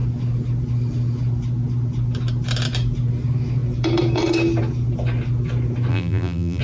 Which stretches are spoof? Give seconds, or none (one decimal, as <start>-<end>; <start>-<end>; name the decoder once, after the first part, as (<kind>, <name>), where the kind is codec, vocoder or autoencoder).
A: 5.9-6.6 (vocoder, BigVGAN v2)